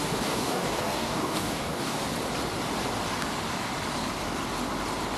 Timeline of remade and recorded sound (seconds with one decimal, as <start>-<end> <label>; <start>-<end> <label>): 0.0-2.0 remade; 2.0-5.2 recorded